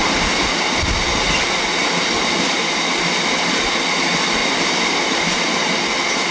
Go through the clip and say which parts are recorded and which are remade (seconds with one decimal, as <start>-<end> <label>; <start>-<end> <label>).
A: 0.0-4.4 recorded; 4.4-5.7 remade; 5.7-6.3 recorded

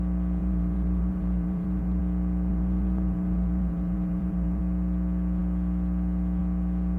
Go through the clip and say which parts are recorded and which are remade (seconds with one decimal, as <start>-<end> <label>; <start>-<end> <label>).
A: 0.0-0.4 recorded; 0.4-2.0 remade; 2.0-2.5 recorded; 2.5-4.6 remade; 4.6-7.0 recorded

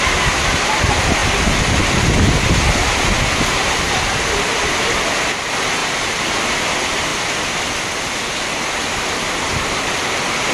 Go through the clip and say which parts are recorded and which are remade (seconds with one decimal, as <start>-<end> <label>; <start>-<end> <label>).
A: 0.0-7.1 recorded; 7.1-7.6 remade; 7.6-10.5 recorded